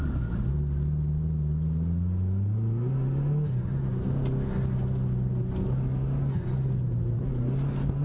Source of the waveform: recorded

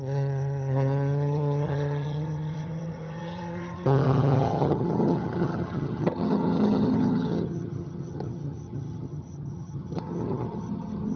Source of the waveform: remade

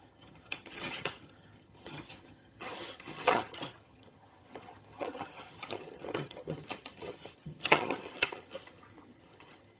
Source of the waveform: remade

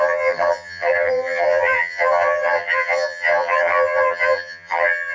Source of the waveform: remade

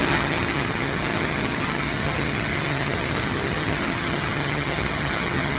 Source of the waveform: remade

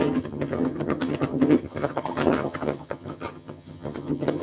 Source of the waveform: remade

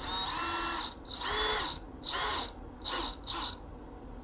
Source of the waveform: recorded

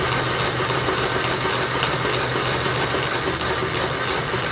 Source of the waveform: recorded